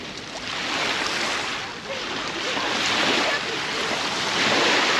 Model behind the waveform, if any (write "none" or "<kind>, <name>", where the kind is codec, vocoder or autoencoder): none